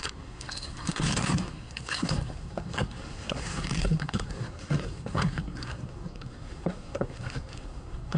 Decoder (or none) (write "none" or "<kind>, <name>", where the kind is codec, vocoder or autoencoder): codec, SNAC